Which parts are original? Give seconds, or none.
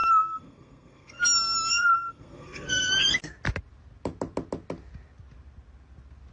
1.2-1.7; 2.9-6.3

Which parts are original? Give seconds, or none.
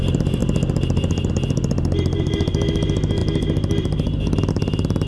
0.0-5.1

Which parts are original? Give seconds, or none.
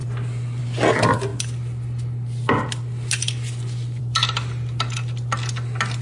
0.0-6.0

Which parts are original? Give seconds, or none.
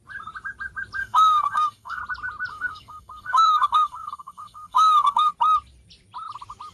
0.0-1.0; 2.0-2.5; 5.3-6.7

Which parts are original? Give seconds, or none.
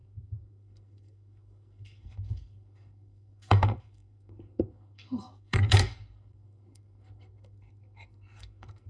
none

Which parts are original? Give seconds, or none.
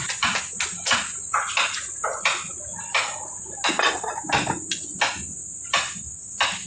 0.0-6.7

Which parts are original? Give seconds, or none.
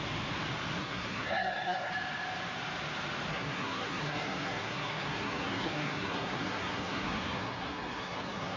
0.0-0.8; 1.9-3.3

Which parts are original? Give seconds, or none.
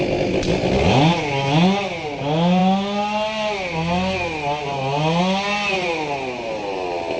0.0-7.2